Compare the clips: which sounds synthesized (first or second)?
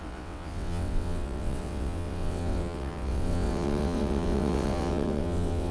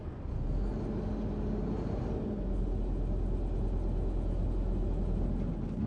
first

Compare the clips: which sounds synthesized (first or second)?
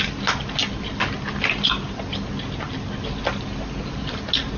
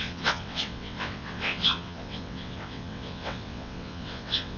second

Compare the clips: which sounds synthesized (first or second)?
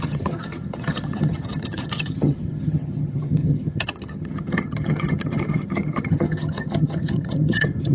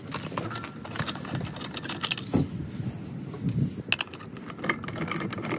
first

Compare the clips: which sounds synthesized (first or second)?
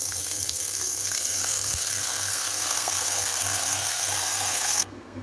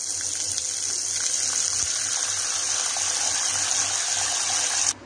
first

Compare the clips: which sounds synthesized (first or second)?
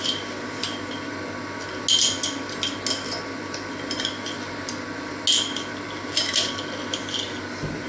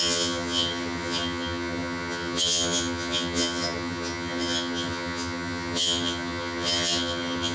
second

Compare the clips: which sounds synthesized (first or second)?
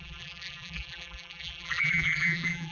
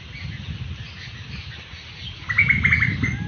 first